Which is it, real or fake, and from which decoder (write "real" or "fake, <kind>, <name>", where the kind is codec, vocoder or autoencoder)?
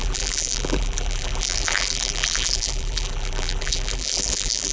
fake, vocoder, BigVGAN v2